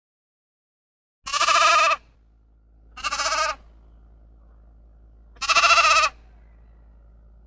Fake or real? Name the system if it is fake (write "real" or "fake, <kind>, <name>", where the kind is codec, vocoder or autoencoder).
real